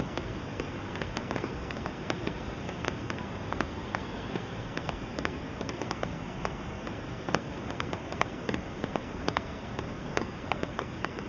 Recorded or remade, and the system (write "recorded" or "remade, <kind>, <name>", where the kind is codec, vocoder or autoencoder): remade, codec, SNAC